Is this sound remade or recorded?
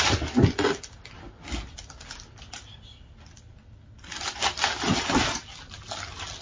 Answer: recorded